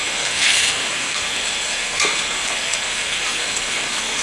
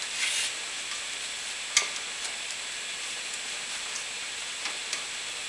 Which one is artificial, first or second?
first